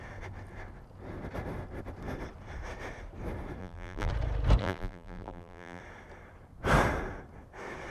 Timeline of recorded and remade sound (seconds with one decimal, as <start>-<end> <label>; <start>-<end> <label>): 0.0-3.6 recorded; 3.6-4.1 remade; 4.1-4.6 recorded; 4.6-5.8 remade; 5.8-7.9 recorded